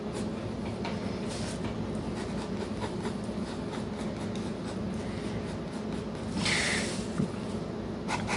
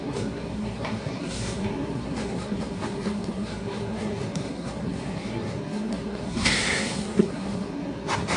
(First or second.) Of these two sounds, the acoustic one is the first